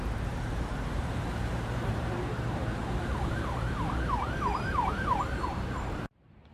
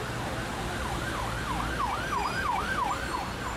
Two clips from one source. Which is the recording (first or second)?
second